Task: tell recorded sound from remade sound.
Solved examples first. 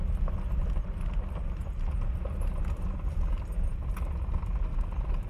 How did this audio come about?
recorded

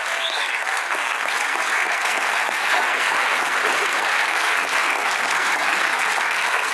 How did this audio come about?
remade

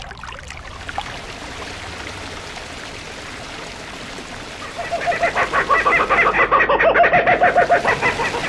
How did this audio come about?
recorded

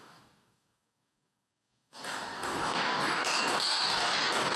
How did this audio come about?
remade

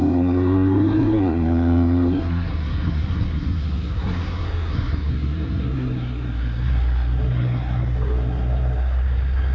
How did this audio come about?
remade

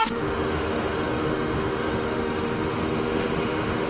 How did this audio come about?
remade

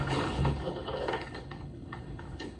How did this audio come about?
remade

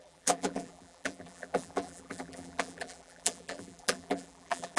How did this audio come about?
remade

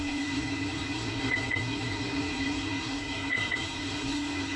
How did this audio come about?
remade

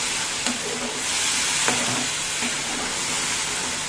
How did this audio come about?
recorded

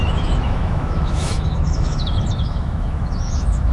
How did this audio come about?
remade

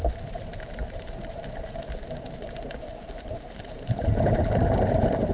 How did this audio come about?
remade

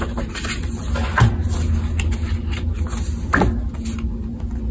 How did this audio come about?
recorded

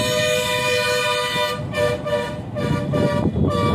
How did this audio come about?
recorded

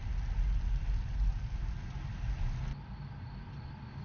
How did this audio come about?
recorded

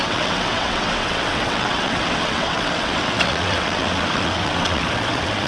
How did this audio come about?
remade